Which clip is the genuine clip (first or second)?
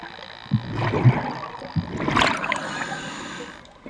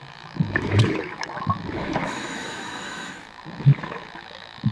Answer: first